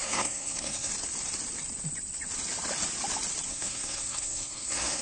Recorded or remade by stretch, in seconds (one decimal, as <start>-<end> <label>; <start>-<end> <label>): 0.0-0.9 remade; 0.9-3.5 recorded; 3.5-5.0 remade